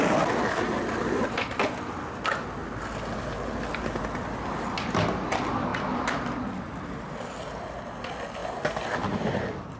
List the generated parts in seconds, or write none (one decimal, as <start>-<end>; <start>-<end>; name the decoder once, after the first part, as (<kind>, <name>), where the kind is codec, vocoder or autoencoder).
none